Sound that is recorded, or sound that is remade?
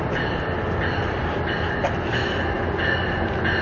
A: recorded